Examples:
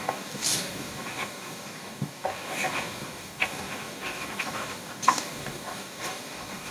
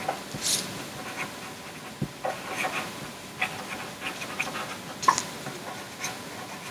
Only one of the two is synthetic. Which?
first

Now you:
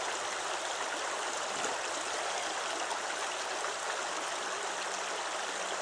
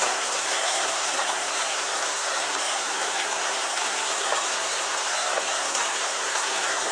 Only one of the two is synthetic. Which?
second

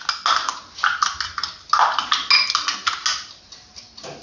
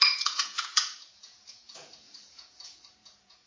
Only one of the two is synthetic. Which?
second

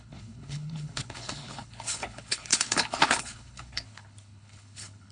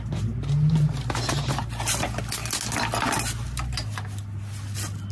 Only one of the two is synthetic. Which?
first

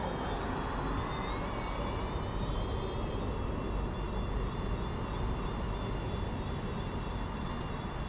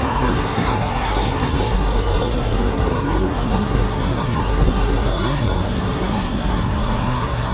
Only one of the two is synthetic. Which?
second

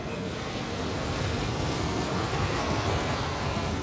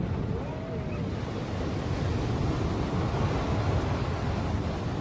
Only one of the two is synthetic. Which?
first